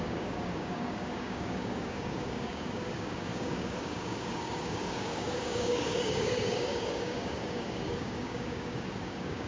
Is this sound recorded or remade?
remade